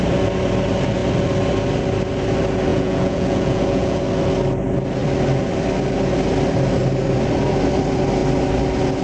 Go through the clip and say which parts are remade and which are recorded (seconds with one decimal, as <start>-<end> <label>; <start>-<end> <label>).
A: 0.0-2.7 recorded; 2.7-4.0 remade; 4.0-9.0 recorded